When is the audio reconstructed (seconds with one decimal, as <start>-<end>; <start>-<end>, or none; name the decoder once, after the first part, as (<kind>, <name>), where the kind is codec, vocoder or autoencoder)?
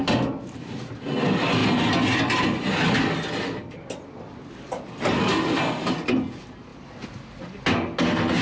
none